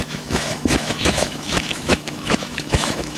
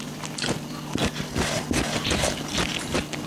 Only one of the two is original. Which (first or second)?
second